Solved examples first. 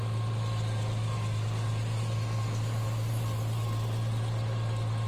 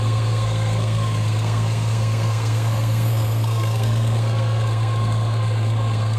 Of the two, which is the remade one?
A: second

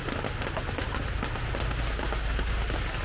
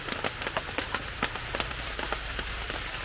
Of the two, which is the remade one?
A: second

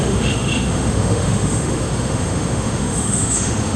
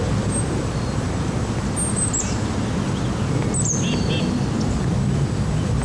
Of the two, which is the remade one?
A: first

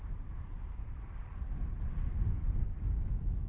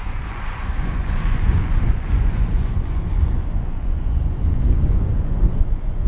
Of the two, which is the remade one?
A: second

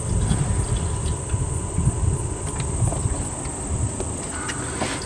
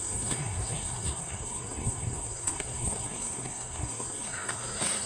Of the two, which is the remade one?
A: second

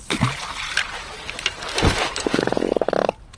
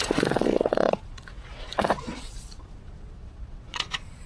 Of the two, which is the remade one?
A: second